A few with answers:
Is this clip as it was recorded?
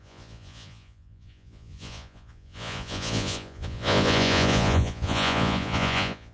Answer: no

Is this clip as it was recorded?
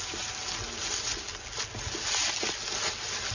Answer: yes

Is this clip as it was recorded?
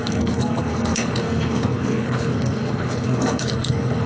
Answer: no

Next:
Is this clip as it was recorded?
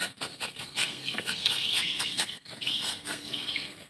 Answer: no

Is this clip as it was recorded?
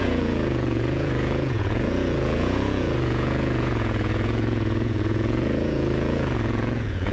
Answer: no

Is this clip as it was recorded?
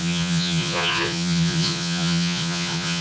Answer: no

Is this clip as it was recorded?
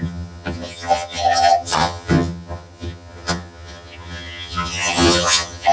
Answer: no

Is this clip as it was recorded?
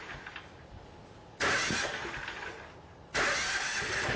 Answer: yes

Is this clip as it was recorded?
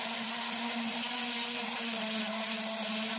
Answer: yes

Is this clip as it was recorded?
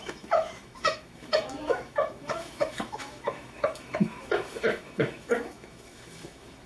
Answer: no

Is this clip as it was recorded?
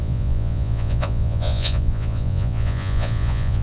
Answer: no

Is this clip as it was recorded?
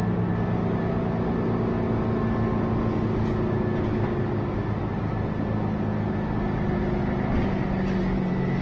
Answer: yes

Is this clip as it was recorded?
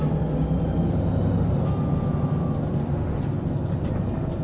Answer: yes